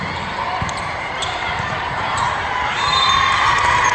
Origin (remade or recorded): remade